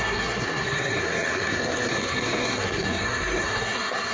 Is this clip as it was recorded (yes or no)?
no